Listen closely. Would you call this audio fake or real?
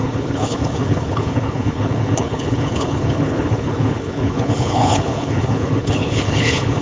fake